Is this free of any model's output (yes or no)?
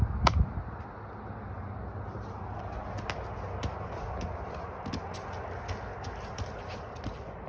yes